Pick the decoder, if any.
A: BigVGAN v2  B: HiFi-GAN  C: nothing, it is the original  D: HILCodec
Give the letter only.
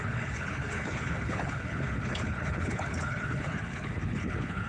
D